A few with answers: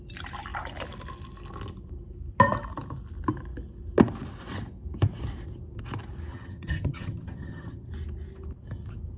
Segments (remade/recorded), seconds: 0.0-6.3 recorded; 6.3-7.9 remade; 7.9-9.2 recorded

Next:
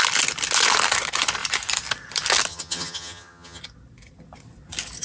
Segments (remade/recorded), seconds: 0.0-2.5 recorded; 2.5-3.6 remade; 3.6-5.0 recorded

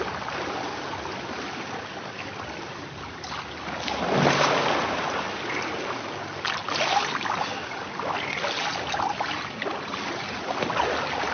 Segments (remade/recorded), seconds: 0.0-11.3 recorded

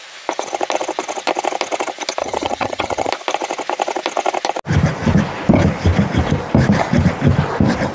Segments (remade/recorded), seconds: 0.0-2.2 recorded; 2.2-3.1 remade; 3.1-7.9 recorded

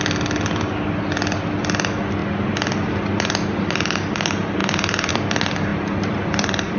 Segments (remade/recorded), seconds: 0.0-6.8 recorded

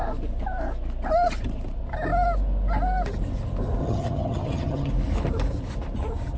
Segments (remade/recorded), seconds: 0.0-3.8 recorded; 3.8-4.9 remade; 4.9-6.4 recorded